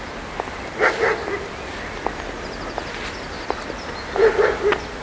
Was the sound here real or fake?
real